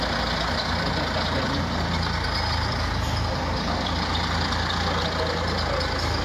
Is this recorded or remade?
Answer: recorded